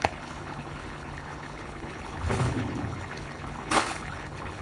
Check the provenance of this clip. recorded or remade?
remade